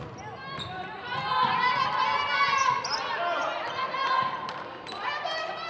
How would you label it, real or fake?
real